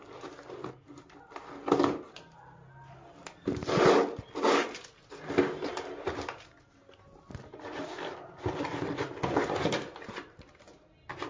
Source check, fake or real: real